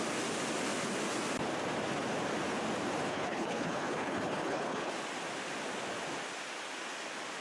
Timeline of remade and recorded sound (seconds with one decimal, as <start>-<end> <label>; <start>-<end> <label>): 0.0-3.1 recorded; 3.1-4.9 remade; 4.9-7.4 recorded